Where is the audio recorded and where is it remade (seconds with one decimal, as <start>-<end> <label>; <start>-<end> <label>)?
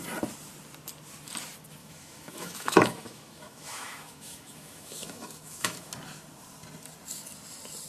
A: 0.0-1.8 recorded; 1.8-5.9 remade; 5.9-7.9 recorded